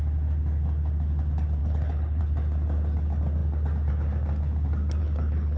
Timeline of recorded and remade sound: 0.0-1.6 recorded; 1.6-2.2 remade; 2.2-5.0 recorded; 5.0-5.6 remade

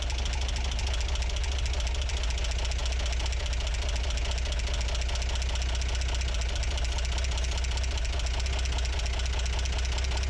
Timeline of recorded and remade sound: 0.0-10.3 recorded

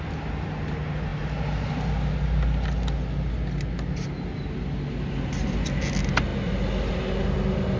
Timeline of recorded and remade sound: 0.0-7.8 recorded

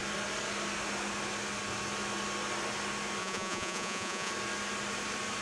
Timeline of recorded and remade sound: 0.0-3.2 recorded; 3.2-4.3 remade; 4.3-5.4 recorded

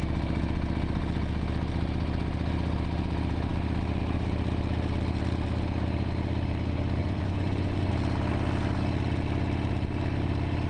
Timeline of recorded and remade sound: 0.0-7.0 recorded; 7.0-7.9 remade; 7.9-10.7 recorded

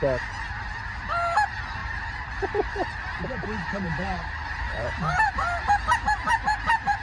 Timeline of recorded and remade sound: 0.0-1.8 recorded; 1.8-5.3 remade; 5.3-7.0 recorded